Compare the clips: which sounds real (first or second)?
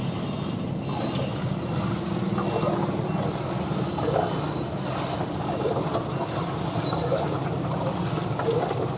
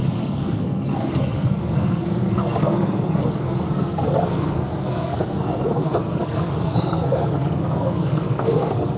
first